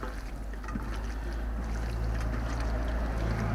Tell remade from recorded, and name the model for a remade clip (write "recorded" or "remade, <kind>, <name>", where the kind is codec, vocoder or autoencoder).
recorded